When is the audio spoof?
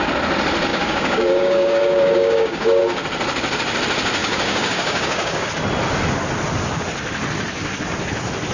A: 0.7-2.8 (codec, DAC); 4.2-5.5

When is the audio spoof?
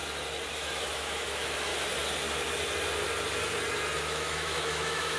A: 0.5-1.7 (autoencoder, DAC-VAE); 4.0-5.2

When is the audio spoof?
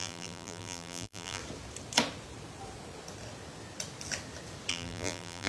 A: 0.0-1.4 (vocoder, BigVGAN v2); 4.7-5.5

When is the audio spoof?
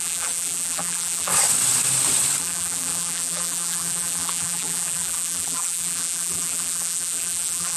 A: 0.0-1.3 (vocoder, BigVGAN v2); 2.4-7.8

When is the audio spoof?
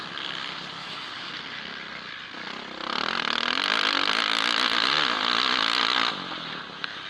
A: 0.8-1.3 (autoencoder, DAC-VAE)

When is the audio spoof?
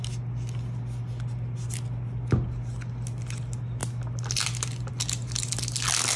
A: none